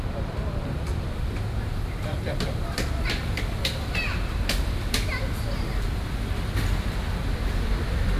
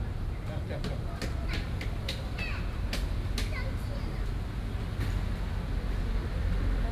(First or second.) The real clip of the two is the second